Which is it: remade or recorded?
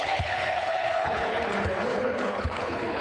remade